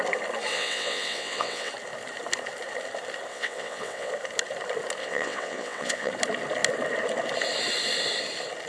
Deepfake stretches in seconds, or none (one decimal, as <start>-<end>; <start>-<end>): 0.5-1.7; 3.3-4.1; 5.0-6.1